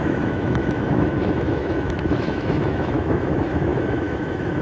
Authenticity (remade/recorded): remade